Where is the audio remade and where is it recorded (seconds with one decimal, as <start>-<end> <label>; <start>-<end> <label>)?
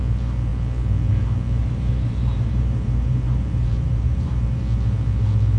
0.0-1.6 recorded; 1.6-4.6 remade; 4.6-5.6 recorded